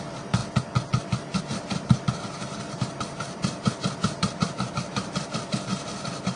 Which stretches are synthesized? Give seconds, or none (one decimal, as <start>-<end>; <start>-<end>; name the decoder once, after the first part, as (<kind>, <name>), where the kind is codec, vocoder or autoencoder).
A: 0.0-0.4 (vocoder, BigVGAN v2); 1.4-6.4